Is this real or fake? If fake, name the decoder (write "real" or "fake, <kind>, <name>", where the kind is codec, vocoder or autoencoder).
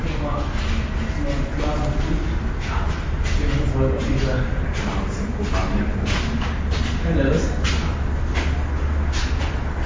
real